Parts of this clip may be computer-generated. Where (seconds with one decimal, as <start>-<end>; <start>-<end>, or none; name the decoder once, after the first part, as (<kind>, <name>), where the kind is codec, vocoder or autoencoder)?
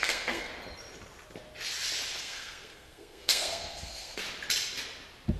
0.0-0.5 (codec, SNAC); 2.2-4.2